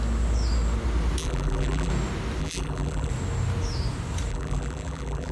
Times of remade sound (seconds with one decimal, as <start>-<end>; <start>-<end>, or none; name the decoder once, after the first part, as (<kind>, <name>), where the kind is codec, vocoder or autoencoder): 1.2-1.9 (vocoder, BigVGAN v2); 2.4-3.1; 4.3-5.3